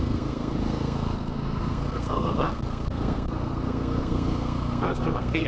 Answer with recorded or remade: remade